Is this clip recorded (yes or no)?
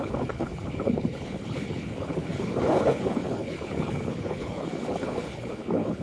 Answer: no